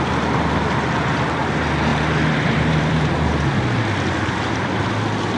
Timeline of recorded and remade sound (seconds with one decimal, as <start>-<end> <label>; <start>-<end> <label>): 0.0-1.9 recorded; 1.9-3.1 remade; 3.1-5.4 recorded